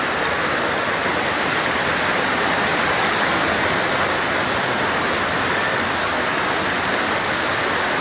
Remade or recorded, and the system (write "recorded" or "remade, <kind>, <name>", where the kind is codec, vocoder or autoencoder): recorded